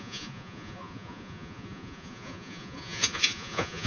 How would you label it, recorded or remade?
remade